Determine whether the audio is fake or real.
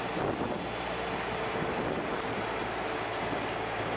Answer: real